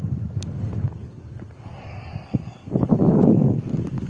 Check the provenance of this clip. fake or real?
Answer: fake